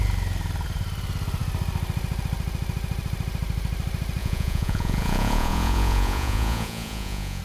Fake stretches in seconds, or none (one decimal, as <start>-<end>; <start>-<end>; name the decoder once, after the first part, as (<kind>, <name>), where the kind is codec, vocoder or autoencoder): 4.2-7.4 (vocoder, Vocos)